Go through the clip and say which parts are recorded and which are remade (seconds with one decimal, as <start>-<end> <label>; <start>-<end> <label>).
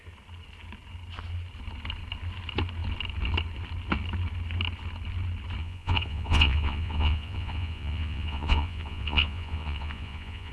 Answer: 0.0-5.6 recorded; 5.6-10.5 remade